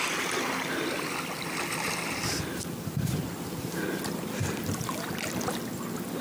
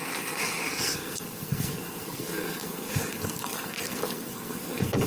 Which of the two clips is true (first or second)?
first